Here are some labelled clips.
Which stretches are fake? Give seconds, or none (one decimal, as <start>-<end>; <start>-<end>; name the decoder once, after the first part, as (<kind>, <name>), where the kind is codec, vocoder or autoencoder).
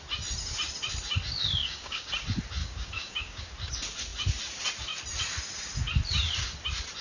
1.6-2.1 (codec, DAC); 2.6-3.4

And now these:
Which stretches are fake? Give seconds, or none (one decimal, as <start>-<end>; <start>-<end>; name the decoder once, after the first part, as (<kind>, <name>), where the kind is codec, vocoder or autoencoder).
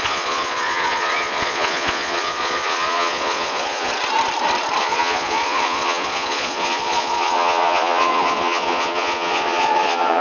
0.0-3.9 (vocoder, Vocos); 4.8-10.2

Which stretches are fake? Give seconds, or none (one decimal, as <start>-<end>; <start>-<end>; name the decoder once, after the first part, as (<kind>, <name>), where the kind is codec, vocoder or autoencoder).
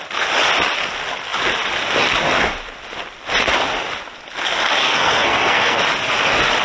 4.8-5.8 (codec, SNAC)